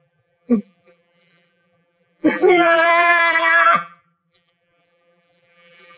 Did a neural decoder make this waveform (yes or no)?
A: yes